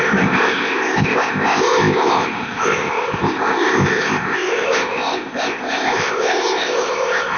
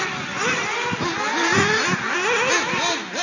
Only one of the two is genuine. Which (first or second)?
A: second